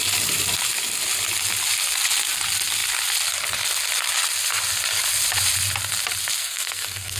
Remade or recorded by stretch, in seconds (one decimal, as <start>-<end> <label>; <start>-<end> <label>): 0.0-6.4 recorded; 6.4-7.2 remade